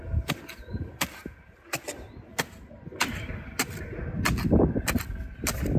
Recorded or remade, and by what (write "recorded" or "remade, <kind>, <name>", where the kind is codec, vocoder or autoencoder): recorded